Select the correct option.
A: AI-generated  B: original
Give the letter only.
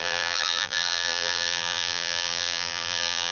A